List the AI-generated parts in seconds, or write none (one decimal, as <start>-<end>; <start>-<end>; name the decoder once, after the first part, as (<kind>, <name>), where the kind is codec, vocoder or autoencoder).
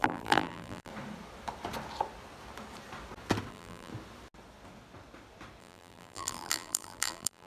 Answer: 0.0-0.9 (vocoder, BigVGAN v2); 3.5-3.9; 5.6-7.5